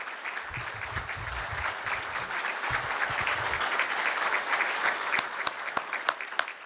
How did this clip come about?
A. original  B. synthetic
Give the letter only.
A